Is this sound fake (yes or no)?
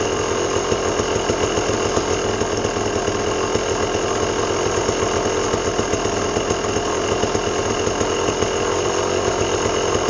no